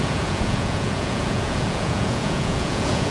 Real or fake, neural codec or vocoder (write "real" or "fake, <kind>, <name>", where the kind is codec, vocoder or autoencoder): fake, vocoder, Vocos